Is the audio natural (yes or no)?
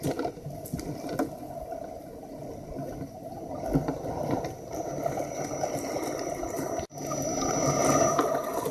yes